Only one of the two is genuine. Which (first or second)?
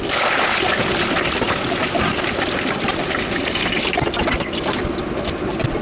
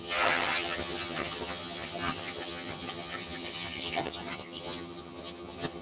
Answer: first